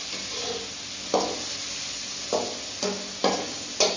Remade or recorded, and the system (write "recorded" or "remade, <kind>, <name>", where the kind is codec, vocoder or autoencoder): recorded